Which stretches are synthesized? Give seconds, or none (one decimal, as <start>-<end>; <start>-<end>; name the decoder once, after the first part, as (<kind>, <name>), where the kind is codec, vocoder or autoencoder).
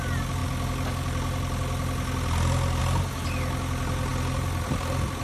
none